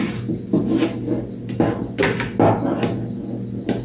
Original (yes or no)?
yes